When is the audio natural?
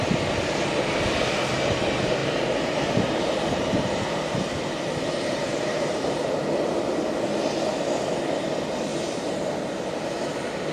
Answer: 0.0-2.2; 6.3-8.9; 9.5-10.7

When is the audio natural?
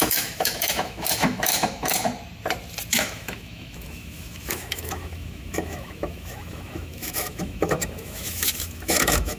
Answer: 2.1-2.9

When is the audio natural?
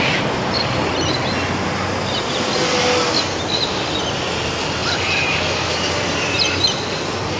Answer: 0.0-4.8; 6.8-7.4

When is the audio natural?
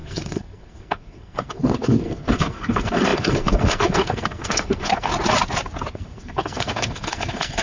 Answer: 5.1-5.9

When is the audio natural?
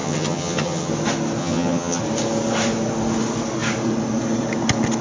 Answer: 0.9-1.4; 2.0-5.0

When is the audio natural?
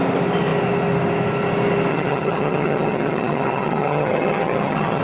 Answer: 0.0-1.9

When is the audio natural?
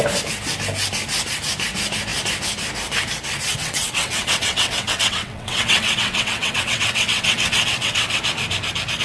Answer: 0.0-3.5; 8.2-9.0